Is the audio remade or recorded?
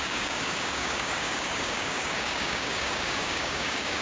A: remade